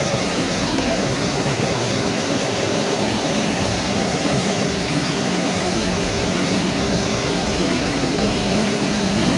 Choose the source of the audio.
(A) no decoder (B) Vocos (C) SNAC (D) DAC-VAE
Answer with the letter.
C